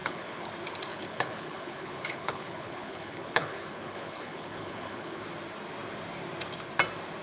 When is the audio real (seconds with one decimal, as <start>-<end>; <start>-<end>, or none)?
0.5-0.9; 5.2-7.2